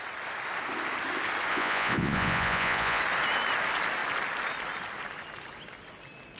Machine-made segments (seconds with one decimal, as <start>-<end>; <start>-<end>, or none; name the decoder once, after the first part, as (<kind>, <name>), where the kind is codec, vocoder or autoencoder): 1.5-3.0 (vocoder, Vocos)